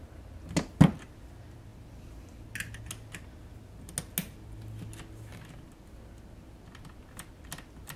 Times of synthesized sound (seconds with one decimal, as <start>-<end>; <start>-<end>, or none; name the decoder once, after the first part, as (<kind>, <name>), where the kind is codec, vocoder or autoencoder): none